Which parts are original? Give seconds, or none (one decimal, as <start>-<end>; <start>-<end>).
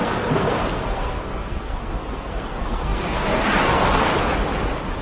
4.1-5.0